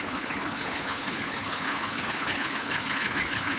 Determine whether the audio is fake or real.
fake